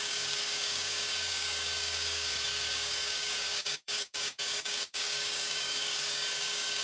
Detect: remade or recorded remade